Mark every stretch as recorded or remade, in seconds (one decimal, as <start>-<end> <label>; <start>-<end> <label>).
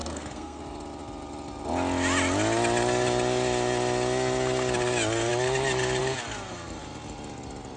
0.0-0.6 remade; 0.6-7.8 recorded